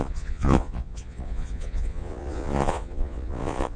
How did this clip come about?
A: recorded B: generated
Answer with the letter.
B